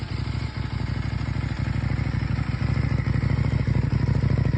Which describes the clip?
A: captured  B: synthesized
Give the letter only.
A